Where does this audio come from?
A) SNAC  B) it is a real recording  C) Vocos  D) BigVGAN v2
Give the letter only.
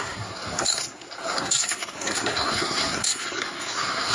A